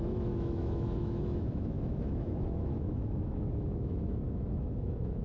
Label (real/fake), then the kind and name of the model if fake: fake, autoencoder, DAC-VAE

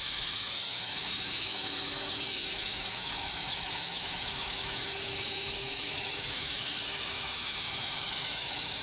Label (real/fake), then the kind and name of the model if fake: fake, autoencoder, DAC-VAE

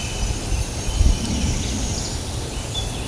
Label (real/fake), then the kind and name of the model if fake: real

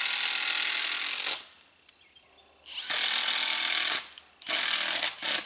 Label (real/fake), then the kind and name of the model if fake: real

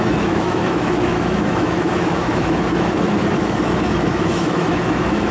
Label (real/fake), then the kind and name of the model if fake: fake, autoencoder, DAC-VAE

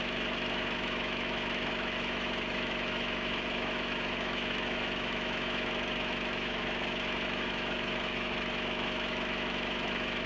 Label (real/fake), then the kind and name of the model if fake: fake, autoencoder, DAC-VAE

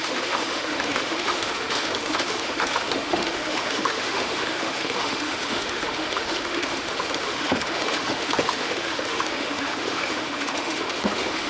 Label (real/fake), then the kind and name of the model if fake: fake, autoencoder, DAC-VAE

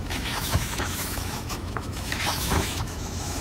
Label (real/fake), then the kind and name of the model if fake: fake, autoencoder, DAC-VAE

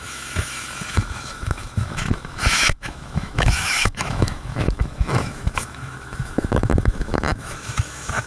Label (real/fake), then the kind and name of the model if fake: fake, autoencoder, DAC-VAE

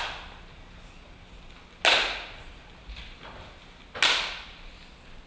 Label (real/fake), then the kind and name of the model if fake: real